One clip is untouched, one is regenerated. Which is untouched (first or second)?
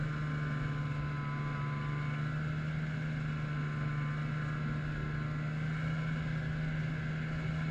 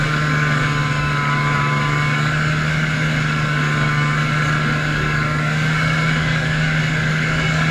first